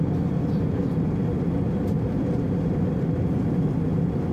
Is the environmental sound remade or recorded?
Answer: recorded